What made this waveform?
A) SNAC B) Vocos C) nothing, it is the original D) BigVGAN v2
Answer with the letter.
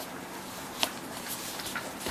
D